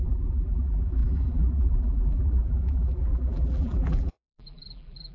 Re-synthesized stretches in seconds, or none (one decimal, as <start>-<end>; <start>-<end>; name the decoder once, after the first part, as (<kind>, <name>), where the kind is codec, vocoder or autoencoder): 0.0-5.1 (vocoder, BigVGAN v2)